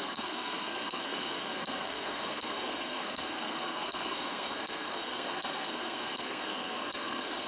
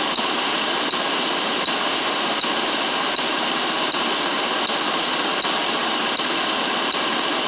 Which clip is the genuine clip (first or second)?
second